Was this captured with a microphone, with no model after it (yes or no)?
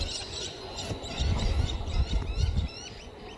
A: no